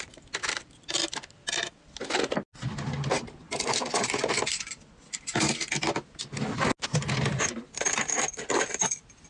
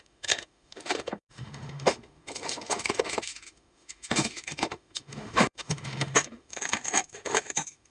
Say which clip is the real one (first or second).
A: first